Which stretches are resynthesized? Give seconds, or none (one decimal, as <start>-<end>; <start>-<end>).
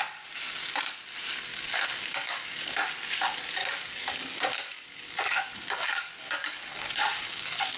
1.5-2.8; 3.6-7.8